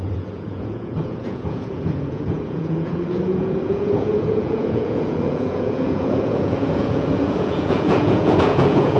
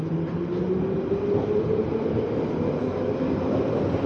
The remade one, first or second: first